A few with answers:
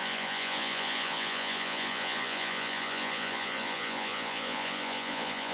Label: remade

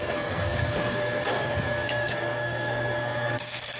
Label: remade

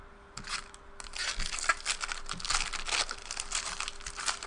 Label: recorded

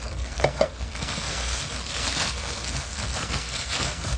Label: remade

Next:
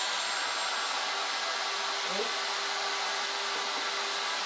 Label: recorded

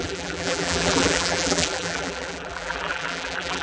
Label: remade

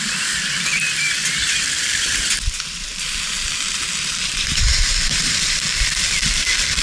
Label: remade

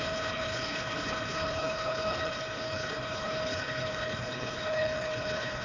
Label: remade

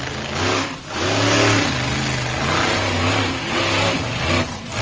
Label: recorded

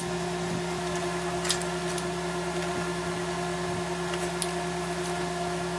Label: recorded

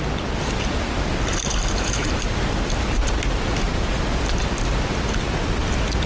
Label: recorded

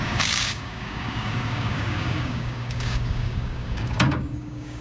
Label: remade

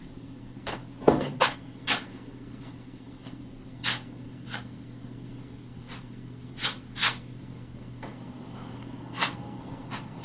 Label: remade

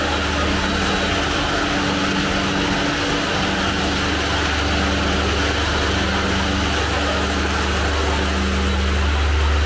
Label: recorded